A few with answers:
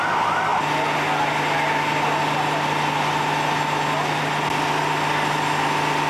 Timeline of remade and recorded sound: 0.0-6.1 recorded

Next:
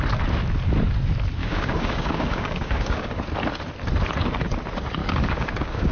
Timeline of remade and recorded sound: 0.0-1.4 recorded; 1.4-3.2 remade; 3.2-5.0 recorded; 5.0-5.9 remade

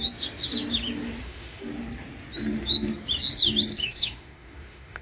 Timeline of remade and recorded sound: 0.0-1.2 recorded; 1.2-1.7 remade; 1.7-3.8 recorded; 3.8-5.0 remade